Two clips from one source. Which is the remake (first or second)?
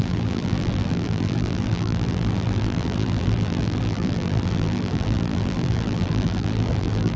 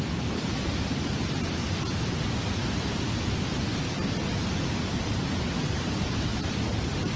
first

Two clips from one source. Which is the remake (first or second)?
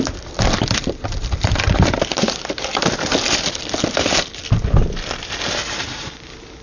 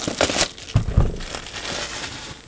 first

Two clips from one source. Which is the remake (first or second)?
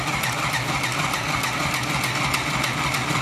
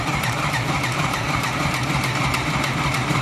second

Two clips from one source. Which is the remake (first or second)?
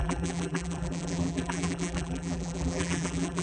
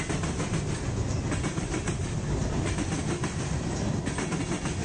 first